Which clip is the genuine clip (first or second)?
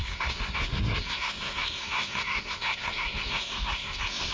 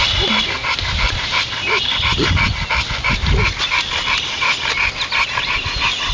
second